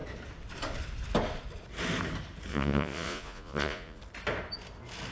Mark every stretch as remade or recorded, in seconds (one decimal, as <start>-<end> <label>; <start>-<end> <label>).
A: 0.0-2.5 recorded; 2.5-4.0 remade; 4.0-5.1 recorded

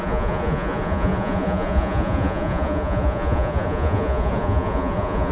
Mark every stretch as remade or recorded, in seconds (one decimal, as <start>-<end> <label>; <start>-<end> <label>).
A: 0.0-5.3 remade

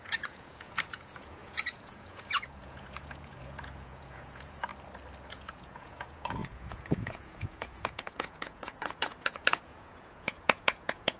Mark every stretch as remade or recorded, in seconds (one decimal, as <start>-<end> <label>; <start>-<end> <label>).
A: 0.0-4.7 remade; 4.7-5.3 recorded; 5.3-11.2 remade

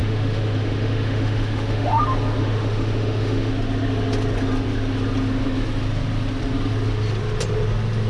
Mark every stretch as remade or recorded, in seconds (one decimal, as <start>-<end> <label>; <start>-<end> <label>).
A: 0.0-2.0 remade; 2.0-2.4 recorded; 2.4-3.5 remade; 3.5-8.1 recorded

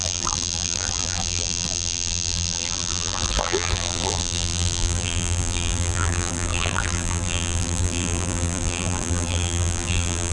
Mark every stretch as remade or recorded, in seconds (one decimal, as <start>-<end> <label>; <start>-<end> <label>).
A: 0.0-10.3 remade

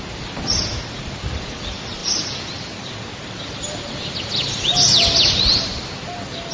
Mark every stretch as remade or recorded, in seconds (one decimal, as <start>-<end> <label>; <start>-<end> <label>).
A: 0.0-6.5 recorded